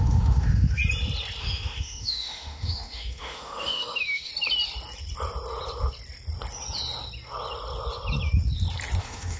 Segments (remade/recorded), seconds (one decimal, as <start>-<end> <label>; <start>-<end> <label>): 0.0-0.8 remade; 0.8-1.4 recorded; 1.4-4.3 remade; 4.3-9.0 recorded; 9.0-9.4 remade